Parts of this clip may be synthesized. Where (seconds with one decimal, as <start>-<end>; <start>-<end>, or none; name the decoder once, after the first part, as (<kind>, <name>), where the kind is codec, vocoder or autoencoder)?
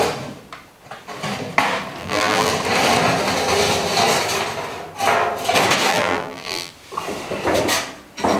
2.0-2.5 (vocoder, BigVGAN v2); 5.9-6.7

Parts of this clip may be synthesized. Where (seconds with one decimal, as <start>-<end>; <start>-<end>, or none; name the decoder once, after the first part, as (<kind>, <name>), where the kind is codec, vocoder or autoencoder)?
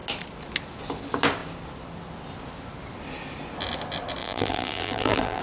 4.2-5.4 (vocoder, BigVGAN v2)